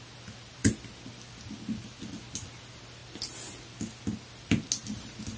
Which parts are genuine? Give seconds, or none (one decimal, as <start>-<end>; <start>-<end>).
0.0-5.4